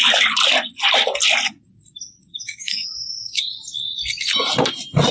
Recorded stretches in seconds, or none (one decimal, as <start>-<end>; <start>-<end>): 0.0-2.3; 3.5-5.1